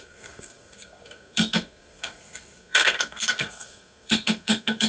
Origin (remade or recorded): remade